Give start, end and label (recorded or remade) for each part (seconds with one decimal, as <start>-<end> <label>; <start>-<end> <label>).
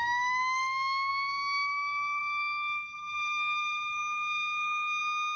0.0-5.4 remade